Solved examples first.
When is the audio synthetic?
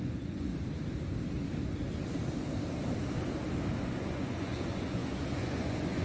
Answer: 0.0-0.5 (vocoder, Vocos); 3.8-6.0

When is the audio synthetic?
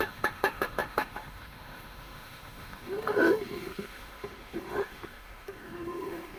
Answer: 0.0-6.4 (autoencoder, DAC-VAE)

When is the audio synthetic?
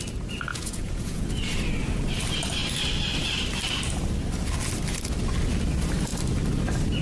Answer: 0.5-1.2 (vocoder, Vocos)